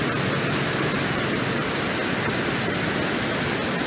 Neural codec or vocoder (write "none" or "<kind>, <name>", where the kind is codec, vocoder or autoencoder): none